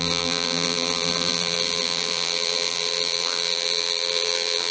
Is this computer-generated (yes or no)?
yes